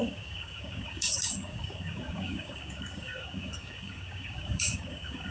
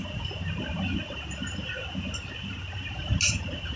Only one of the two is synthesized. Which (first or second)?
first